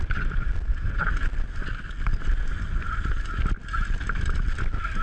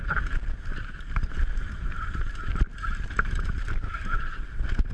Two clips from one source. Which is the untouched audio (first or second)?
first